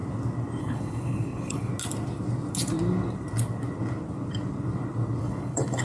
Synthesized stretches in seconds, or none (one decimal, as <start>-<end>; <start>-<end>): 0.6-1.7; 5.2-5.8